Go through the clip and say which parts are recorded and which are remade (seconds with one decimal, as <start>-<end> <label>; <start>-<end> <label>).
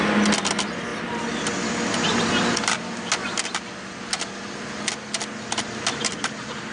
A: 0.0-6.7 recorded